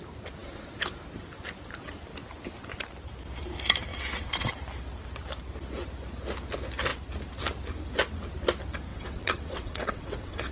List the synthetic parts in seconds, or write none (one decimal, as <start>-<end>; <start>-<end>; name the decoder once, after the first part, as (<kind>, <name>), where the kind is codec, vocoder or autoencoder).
3.9-4.5 (vocoder, WaveNeXt); 8.9-10.5